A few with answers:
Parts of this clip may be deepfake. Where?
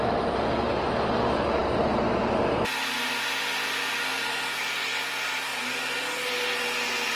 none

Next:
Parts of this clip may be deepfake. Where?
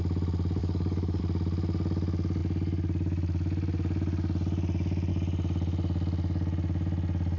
0.6-1.2 (codec, DAC)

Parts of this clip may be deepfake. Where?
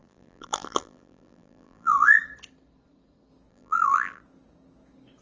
0.0-2.2 (vocoder, BigVGAN v2); 3.5-4.2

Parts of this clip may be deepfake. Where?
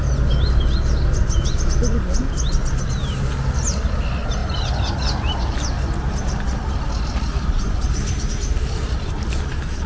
none